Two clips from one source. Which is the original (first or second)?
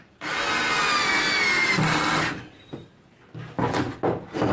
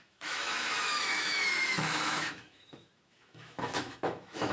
first